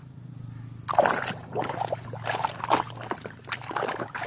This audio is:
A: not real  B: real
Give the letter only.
B